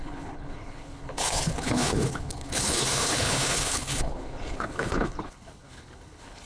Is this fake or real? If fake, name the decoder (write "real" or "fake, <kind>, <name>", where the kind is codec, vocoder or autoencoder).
fake, codec, HILCodec